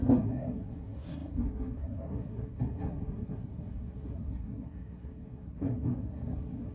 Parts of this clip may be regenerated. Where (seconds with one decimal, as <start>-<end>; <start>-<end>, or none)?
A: 0.0-6.7